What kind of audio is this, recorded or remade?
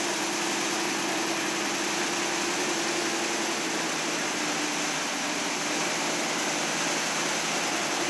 recorded